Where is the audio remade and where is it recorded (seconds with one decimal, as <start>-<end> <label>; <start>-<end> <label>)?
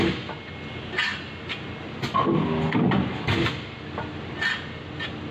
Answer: 0.0-5.3 recorded